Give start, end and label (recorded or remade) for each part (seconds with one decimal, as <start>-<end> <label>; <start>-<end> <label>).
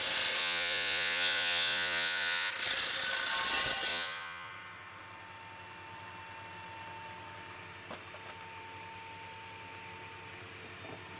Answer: 0.0-0.4 recorded; 0.4-2.5 remade; 2.5-3.9 recorded; 3.9-4.5 remade; 4.5-11.2 recorded